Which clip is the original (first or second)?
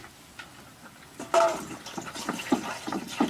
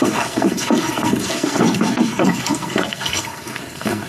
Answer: first